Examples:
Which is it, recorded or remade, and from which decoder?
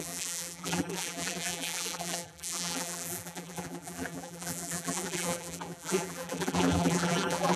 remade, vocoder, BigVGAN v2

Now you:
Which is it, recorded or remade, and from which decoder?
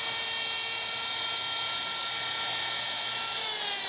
recorded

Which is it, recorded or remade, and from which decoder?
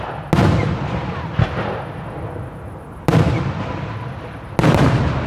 recorded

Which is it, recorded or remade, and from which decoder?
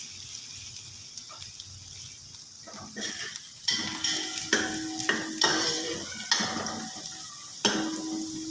recorded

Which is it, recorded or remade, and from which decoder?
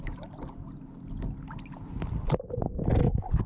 recorded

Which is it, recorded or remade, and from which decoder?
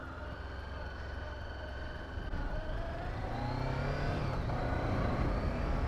recorded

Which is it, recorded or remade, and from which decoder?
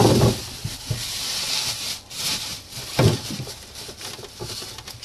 recorded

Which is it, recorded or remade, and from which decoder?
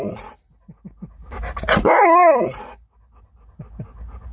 recorded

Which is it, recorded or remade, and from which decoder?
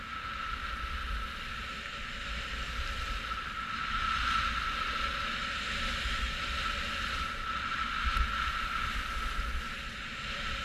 recorded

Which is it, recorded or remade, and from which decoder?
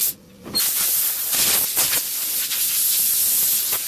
recorded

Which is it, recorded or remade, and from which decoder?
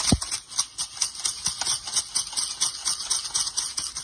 recorded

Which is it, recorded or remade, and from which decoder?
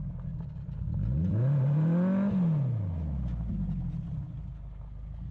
recorded